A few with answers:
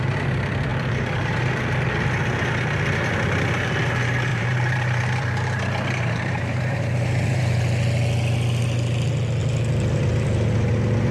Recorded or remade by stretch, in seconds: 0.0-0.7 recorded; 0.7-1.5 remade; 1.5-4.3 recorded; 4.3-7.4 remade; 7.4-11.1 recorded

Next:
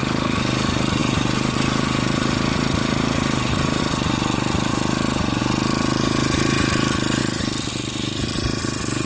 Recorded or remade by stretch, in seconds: 0.0-1.0 recorded; 1.0-3.8 remade; 3.8-9.1 recorded

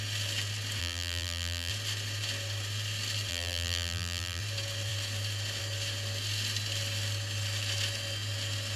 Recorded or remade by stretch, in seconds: 0.0-0.8 recorded; 0.8-1.7 remade; 1.7-3.3 recorded; 3.3-4.4 remade; 4.4-8.8 recorded

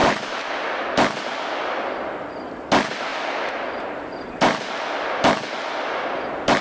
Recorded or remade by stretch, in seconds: 0.0-0.5 remade; 0.5-3.1 recorded; 3.1-4.7 remade; 4.7-6.6 recorded

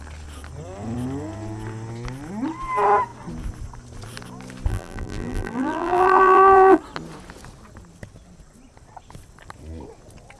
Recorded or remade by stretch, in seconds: 0.0-4.7 recorded; 4.7-6.8 remade; 6.8-10.4 recorded

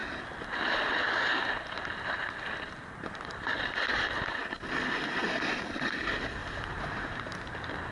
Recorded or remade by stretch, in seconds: 0.0-6.4 recorded; 6.4-7.3 remade; 7.3-7.9 recorded